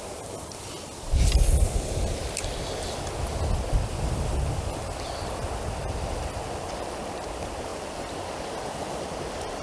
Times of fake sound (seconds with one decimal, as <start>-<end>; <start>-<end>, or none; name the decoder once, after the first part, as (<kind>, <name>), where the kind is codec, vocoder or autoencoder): none